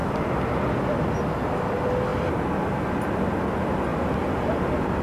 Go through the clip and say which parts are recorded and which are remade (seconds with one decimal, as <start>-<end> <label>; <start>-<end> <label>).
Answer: 0.0-5.0 recorded